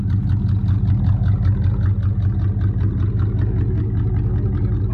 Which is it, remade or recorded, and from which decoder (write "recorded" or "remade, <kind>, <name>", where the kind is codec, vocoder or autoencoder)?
recorded